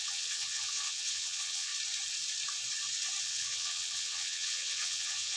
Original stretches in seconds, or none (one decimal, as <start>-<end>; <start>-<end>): 1.7-3.2